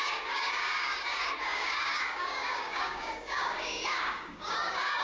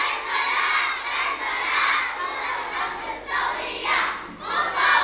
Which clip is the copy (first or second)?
first